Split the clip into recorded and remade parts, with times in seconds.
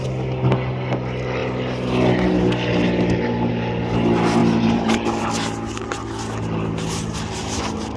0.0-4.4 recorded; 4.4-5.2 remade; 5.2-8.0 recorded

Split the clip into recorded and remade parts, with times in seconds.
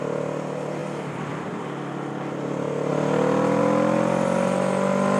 0.0-0.8 recorded; 0.8-2.1 remade; 2.1-5.2 recorded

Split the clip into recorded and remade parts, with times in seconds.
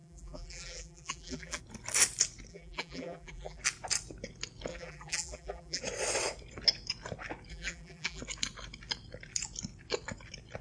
0.0-1.6 remade; 1.6-2.5 recorded; 2.5-3.6 remade; 3.6-4.7 recorded; 4.7-5.8 remade; 5.8-7.5 recorded; 7.5-8.2 remade; 8.2-10.6 recorded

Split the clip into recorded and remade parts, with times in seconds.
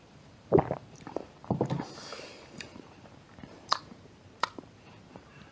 0.0-5.5 remade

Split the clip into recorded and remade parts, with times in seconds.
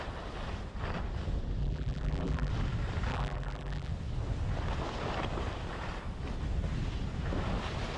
0.0-1.6 recorded; 1.6-2.5 remade; 2.5-3.1 recorded; 3.1-3.9 remade; 3.9-8.0 recorded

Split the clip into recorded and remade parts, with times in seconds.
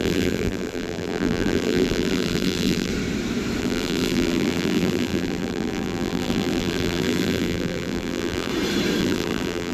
0.0-2.9 remade; 2.9-3.6 recorded; 3.6-8.5 remade; 8.5-9.0 recorded; 9.0-9.7 remade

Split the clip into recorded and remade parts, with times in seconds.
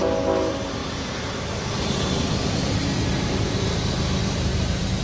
0.0-4.5 recorded; 4.5-5.0 remade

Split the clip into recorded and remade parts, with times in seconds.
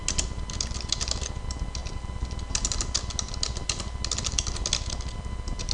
0.0-5.7 recorded